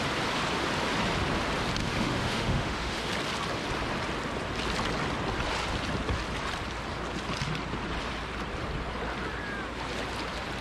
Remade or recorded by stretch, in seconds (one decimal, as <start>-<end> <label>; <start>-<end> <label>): 0.0-1.8 recorded; 1.8-3.1 remade; 3.1-10.6 recorded